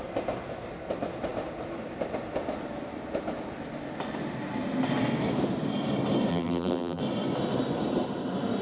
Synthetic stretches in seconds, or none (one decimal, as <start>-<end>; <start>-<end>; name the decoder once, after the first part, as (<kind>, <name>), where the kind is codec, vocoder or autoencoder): 6.3-7.0 (vocoder, BigVGAN v2)